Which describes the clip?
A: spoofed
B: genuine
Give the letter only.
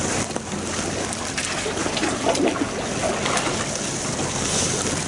B